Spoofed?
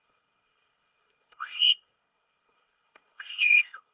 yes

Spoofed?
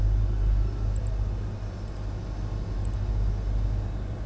no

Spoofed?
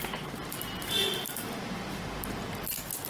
no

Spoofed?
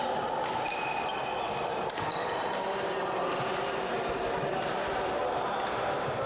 no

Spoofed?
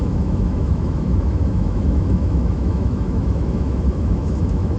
yes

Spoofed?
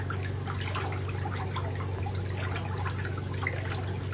no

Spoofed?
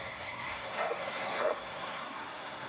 yes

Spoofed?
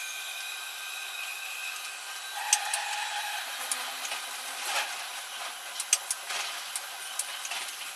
no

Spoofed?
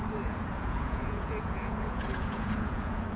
yes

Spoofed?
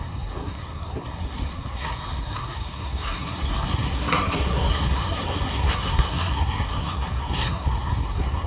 yes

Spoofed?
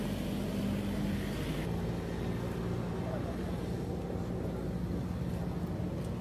no